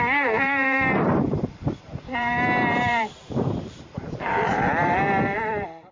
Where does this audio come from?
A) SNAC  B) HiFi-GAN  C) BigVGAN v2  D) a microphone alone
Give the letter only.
C